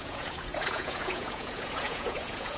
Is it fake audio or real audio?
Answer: fake